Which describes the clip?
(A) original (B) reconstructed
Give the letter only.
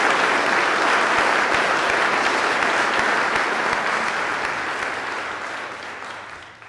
A